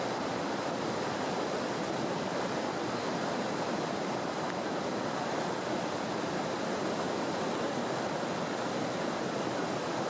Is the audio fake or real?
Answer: real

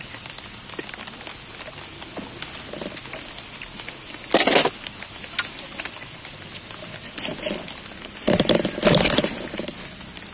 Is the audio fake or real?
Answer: real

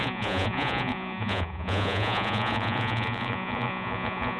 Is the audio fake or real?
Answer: fake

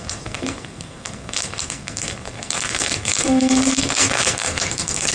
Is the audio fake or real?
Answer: fake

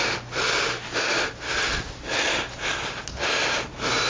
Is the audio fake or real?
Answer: real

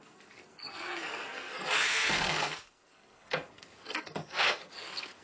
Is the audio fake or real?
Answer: fake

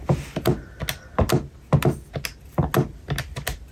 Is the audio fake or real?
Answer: real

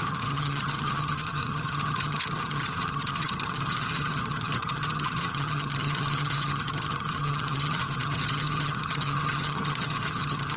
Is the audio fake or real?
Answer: fake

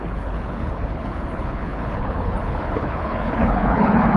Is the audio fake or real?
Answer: fake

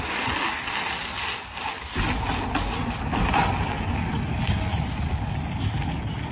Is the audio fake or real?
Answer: real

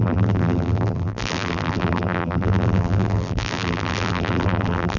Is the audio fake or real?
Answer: fake